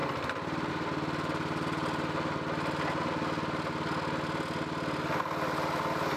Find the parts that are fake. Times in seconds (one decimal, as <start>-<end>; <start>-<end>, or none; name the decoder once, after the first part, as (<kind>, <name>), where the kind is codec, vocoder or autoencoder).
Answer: none